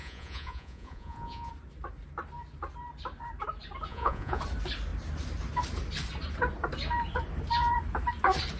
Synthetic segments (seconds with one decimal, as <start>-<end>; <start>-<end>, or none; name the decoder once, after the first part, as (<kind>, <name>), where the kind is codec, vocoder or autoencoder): 0.0-1.5 (vocoder, Vocos); 3.9-4.4

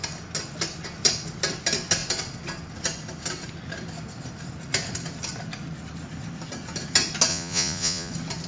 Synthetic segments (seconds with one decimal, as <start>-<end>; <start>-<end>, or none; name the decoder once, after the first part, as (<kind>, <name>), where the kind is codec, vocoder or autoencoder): 7.3-8.1 (vocoder, Vocos)